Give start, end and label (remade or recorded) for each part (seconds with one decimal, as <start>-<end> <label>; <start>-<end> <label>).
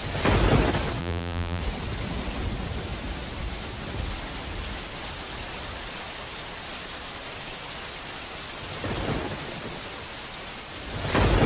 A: 0.0-1.0 recorded; 1.0-1.6 remade; 1.6-11.5 recorded